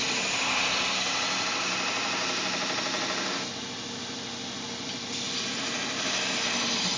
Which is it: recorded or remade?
recorded